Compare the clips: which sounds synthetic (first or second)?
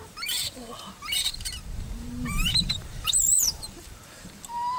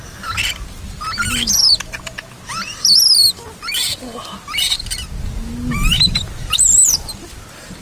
first